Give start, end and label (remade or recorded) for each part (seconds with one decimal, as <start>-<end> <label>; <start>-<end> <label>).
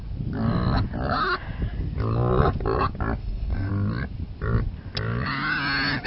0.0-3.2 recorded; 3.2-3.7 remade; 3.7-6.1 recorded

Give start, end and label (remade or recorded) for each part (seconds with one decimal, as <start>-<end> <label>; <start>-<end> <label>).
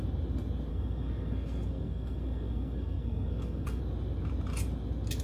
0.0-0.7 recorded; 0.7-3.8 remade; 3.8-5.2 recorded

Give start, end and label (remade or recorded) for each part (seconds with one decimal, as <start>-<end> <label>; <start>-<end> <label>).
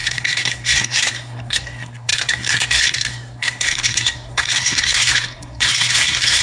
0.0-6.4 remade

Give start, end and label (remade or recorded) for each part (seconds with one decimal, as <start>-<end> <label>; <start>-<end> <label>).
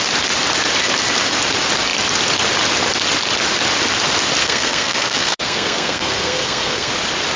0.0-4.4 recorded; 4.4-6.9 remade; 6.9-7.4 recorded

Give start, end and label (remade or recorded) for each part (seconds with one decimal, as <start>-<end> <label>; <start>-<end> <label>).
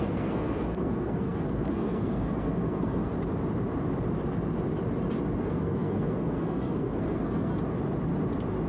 0.0-3.1 remade; 3.1-5.4 recorded; 5.4-7.5 remade; 7.5-8.7 recorded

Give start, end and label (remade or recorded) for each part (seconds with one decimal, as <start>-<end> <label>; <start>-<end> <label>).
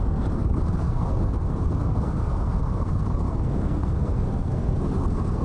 0.0-5.4 remade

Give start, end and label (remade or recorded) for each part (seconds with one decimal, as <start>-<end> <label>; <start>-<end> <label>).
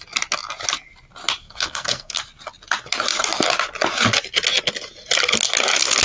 0.0-1.4 recorded; 1.4-2.2 remade; 2.2-6.0 recorded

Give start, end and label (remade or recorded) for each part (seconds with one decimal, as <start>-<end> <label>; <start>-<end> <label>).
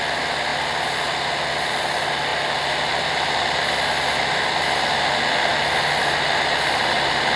0.0-7.4 recorded